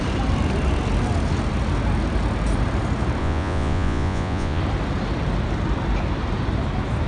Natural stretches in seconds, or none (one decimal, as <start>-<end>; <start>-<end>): 0.0-3.2; 4.6-7.1